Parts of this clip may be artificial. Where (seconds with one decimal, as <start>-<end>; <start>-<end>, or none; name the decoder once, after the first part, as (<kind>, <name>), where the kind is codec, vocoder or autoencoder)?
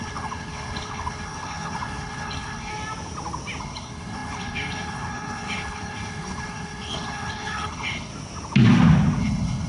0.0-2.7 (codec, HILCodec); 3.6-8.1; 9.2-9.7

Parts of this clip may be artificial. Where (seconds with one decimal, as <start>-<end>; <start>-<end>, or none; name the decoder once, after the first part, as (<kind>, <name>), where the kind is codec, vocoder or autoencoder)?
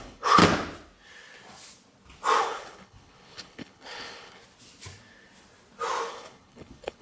0.0-0.4 (codec, HILCodec); 2.4-4.4; 6.1-7.0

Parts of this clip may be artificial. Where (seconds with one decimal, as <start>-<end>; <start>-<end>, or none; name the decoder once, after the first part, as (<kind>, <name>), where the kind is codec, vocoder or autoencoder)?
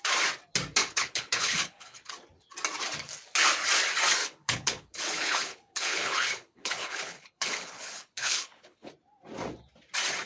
0.8-2.1 (codec, HILCodec); 4.2-8.9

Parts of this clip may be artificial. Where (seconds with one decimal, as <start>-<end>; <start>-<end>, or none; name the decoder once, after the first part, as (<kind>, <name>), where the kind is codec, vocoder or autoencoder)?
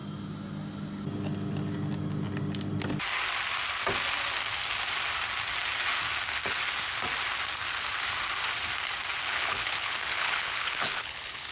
9.3-11.5 (codec, HILCodec)